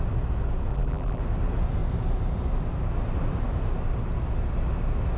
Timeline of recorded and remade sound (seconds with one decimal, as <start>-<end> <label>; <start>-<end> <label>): 0.0-0.7 recorded; 0.7-1.2 remade; 1.2-5.2 recorded